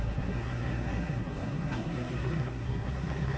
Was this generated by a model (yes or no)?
yes